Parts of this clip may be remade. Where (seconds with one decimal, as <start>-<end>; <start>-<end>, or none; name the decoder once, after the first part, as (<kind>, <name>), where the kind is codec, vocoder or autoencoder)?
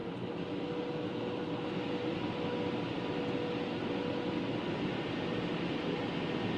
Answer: none